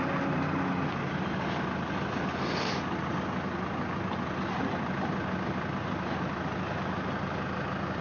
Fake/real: real